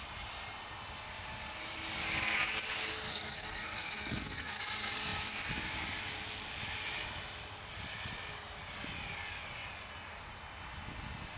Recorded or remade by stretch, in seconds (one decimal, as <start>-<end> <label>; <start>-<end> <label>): 0.0-3.1 recorded; 3.1-4.6 remade; 4.6-11.4 recorded